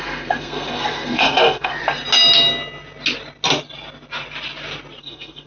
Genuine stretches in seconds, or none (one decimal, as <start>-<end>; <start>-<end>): 1.7-5.0